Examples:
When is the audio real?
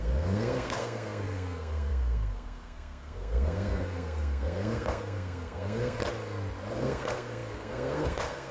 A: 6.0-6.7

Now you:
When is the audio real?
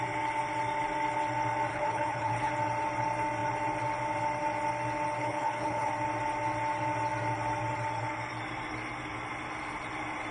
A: 0.0-1.7; 2.5-5.2; 5.9-10.3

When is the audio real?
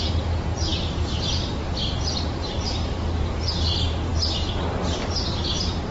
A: 0.0-0.7; 3.4-5.9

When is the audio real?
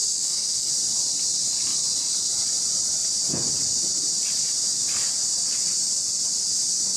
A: 0.7-7.0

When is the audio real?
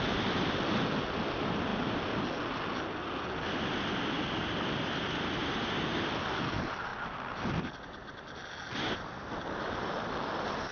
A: 0.0-10.7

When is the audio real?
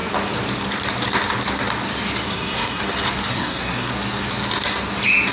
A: 0.0-2.3; 2.8-3.3; 3.9-5.3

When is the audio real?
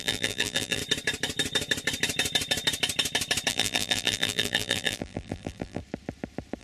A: 0.8-3.5; 5.8-6.6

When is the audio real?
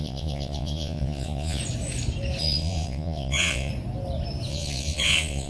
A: 1.6-2.4; 3.7-4.5